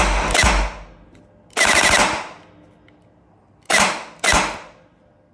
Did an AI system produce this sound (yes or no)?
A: no